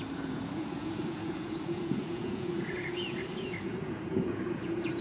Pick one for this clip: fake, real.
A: fake